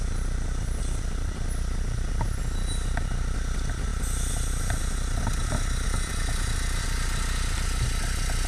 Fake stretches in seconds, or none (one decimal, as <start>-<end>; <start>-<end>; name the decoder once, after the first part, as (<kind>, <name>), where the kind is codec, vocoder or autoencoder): none